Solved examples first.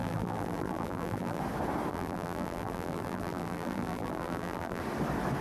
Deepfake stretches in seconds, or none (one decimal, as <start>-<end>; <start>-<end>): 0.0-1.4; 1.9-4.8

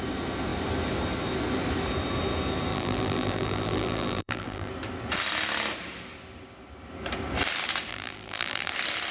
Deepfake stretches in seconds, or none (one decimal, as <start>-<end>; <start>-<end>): 2.7-4.7; 7.9-8.7

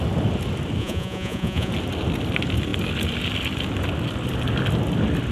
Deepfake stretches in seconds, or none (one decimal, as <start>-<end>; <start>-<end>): 0.8-1.7

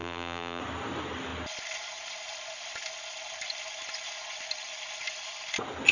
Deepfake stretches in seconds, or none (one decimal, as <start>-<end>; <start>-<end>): 0.0-0.6